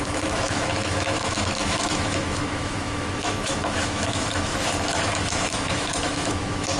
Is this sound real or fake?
fake